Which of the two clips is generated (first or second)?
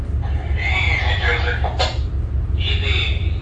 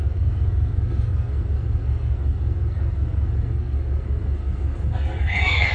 second